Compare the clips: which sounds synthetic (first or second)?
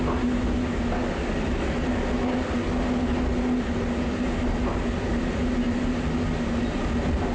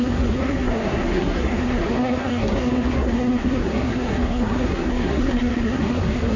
second